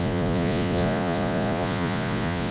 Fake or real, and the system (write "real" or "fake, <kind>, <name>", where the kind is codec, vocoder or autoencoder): fake, vocoder, Vocos